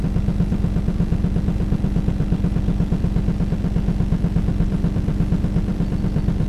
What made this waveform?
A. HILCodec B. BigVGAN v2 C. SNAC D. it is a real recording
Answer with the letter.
B